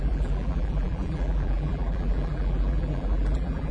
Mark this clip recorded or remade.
remade